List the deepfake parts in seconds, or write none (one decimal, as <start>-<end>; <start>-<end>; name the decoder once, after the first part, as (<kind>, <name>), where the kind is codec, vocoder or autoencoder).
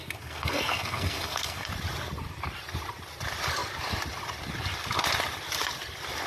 0.0-1.7 (codec, SNAC)